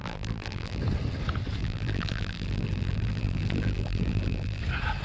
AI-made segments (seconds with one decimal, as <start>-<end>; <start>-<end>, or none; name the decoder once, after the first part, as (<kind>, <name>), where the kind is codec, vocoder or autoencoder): 0.0-0.8 (vocoder, BigVGAN v2); 1.6-4.6